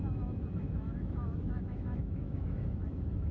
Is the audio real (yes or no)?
no